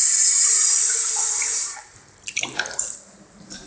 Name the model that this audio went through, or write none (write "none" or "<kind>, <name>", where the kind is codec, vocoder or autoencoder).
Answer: vocoder, BigVGAN v2